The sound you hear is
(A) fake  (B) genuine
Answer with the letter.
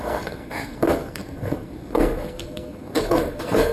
A